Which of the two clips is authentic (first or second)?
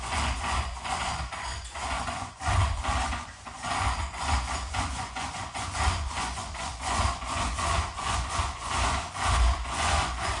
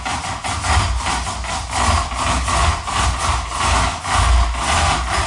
second